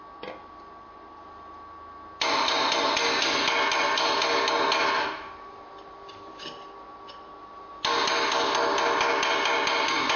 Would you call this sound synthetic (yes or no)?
no